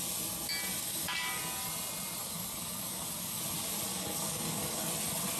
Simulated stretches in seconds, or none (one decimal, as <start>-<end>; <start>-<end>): 0.8-1.4; 2.2-3.4; 3.9-4.9